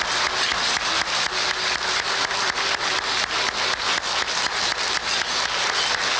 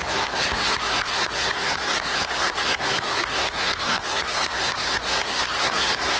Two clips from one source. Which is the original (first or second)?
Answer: first